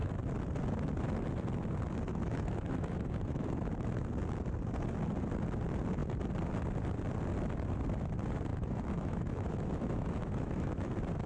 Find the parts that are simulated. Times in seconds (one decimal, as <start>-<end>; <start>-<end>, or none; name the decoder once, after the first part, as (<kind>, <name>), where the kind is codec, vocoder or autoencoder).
2.1-3.7 (autoencoder, DAC-VAE); 8.5-10.9